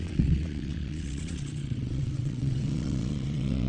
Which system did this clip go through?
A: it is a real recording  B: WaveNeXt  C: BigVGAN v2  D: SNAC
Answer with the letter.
B